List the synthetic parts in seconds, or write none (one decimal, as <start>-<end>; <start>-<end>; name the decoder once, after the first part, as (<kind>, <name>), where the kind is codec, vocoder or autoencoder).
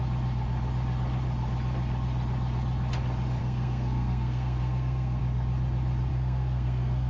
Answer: 3.4-5.2 (codec, SNAC); 6.1-7.1